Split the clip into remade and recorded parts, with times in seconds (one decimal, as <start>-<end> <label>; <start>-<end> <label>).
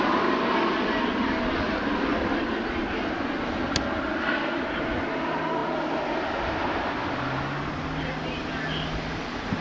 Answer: 0.0-9.6 recorded